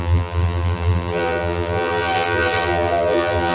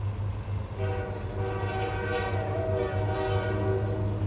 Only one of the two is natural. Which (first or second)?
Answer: second